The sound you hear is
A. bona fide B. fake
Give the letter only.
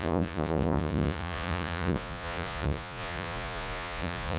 B